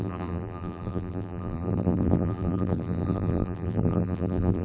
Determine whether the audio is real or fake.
fake